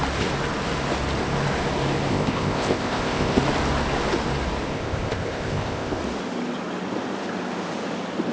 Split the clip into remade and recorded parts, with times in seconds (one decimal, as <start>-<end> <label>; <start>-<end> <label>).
0.0-2.1 recorded; 2.1-3.4 remade; 3.4-4.7 recorded; 4.7-6.0 remade; 6.0-8.3 recorded